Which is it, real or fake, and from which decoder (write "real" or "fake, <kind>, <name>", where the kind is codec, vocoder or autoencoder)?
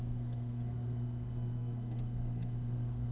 fake, codec, SNAC